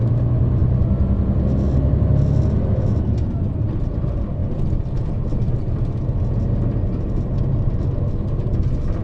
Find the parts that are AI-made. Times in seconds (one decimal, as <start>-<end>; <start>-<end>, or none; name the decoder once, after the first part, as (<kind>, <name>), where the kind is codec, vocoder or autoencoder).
none